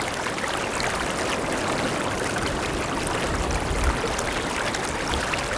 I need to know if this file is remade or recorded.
recorded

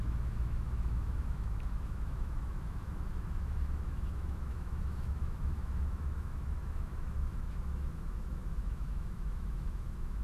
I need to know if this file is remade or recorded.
remade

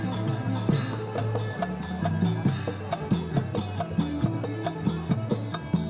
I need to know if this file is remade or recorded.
recorded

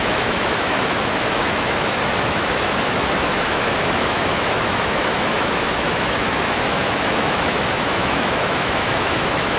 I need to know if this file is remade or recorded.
remade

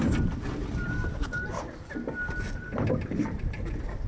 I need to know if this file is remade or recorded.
recorded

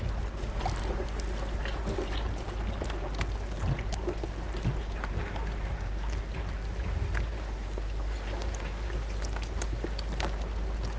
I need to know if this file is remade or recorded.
recorded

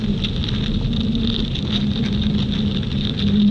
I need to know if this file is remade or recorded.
recorded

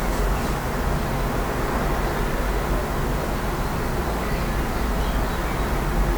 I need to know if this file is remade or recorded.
recorded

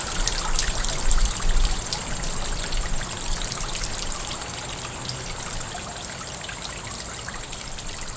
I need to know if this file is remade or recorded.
recorded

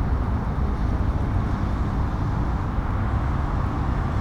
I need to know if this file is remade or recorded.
recorded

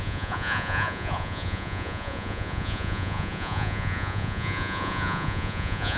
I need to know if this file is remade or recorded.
remade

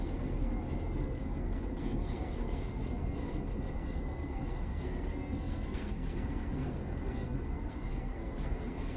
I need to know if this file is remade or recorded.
remade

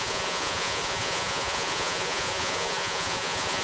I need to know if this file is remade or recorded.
remade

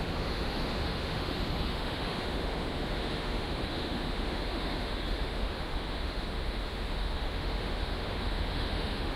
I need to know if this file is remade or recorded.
remade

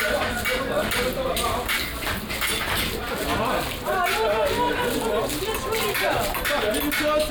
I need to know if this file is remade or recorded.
recorded